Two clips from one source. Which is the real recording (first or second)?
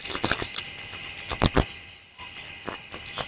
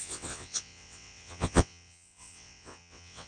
first